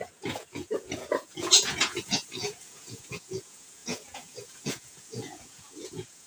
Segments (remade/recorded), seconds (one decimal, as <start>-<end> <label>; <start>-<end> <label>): 0.0-6.3 remade